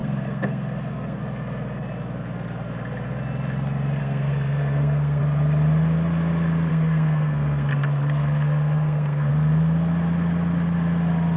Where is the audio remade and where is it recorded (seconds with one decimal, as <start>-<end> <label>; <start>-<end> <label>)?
0.0-1.2 remade; 1.2-4.0 recorded; 4.0-5.2 remade; 5.2-6.7 recorded; 6.7-9.3 remade; 9.3-11.4 recorded